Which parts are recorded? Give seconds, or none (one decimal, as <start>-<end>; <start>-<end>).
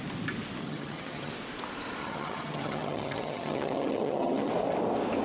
0.0-0.6; 1.3-2.0; 4.5-5.2